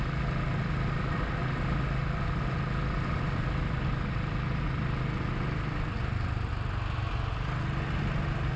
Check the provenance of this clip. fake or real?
real